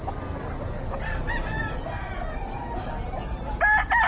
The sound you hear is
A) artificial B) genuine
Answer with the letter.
B